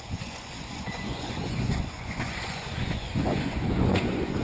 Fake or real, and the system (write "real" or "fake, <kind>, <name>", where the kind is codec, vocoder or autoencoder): fake, vocoder, Vocos